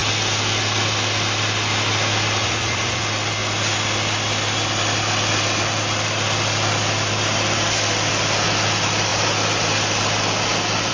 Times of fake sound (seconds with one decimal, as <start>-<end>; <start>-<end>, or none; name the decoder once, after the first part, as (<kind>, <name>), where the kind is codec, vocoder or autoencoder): 2.4-3.0 (vocoder, Vocos)